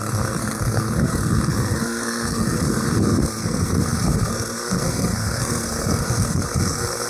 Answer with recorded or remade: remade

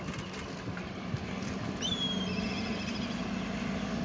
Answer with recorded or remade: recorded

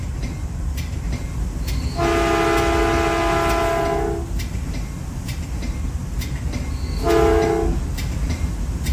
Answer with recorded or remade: recorded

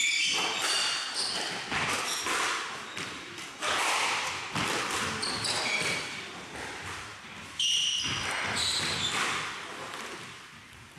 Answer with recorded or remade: recorded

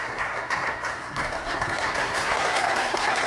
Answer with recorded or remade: remade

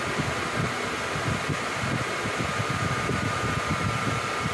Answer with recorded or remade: recorded